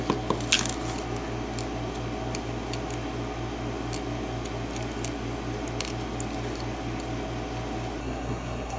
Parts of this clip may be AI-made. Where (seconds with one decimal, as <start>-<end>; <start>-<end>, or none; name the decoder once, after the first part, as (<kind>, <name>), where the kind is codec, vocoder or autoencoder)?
8.0-8.8 (codec, SNAC)